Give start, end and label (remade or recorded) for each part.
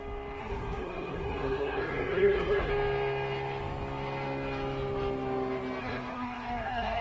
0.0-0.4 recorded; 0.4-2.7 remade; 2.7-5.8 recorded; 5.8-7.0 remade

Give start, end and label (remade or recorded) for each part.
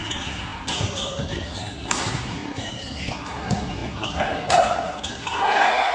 0.0-5.9 remade